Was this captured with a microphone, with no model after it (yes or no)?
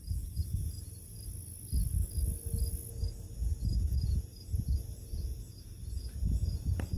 yes